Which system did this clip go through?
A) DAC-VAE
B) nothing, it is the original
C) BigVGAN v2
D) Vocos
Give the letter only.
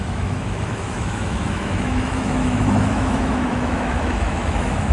A